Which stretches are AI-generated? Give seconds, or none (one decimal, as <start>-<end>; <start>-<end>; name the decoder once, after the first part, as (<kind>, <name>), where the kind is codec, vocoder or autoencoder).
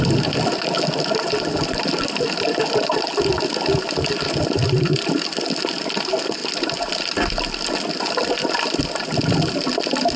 none